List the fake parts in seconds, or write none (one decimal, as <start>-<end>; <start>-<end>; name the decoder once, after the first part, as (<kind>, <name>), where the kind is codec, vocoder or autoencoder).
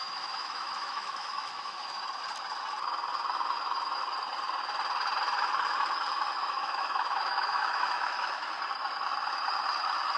0.0-2.0 (autoencoder, DAC-VAE); 6.4-8.6